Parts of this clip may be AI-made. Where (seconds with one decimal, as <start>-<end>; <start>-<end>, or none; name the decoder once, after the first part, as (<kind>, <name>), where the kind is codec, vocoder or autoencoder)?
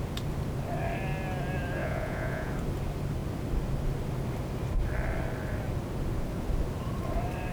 1.8-2.5 (vocoder, Vocos)